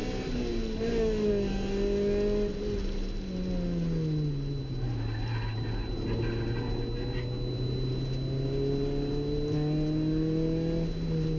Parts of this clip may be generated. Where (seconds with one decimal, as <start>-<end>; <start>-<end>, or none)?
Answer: none